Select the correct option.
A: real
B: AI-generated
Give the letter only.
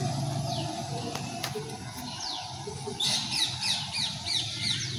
B